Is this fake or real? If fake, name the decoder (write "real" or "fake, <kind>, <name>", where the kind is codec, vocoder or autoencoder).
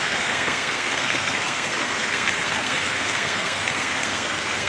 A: fake, codec, SNAC